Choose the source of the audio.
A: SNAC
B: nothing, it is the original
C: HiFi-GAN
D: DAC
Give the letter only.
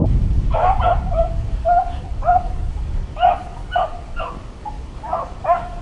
D